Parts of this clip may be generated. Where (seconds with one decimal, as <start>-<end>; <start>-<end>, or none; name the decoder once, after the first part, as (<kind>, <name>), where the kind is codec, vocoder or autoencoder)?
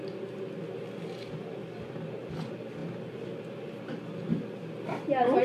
none